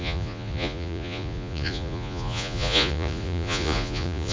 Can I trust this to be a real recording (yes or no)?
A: no